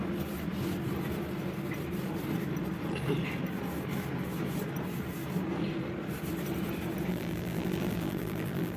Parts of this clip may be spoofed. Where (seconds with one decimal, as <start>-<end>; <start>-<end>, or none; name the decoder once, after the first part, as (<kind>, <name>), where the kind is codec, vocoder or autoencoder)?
7.1-8.8 (vocoder, BigVGAN v2)

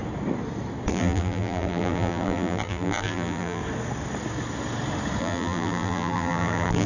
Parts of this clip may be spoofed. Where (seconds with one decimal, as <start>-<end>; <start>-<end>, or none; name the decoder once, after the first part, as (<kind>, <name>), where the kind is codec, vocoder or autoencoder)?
0.9-3.6 (vocoder, BigVGAN v2); 5.2-6.9